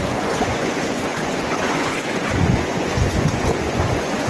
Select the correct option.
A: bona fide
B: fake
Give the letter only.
B